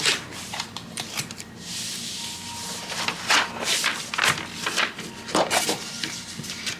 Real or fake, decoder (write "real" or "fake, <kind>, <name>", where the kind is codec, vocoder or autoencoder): fake, vocoder, BigVGAN v2